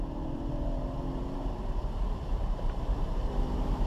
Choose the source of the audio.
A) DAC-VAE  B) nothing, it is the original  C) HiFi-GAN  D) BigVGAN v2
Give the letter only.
D